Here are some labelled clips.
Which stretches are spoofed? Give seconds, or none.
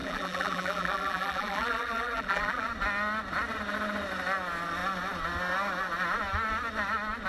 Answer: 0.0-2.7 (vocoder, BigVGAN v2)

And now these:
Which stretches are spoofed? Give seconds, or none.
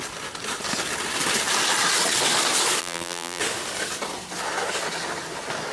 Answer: 2.8-3.4 (vocoder, BigVGAN v2)